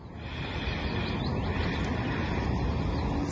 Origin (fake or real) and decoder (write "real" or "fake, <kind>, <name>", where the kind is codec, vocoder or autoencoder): real